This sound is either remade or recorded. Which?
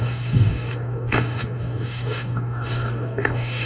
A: remade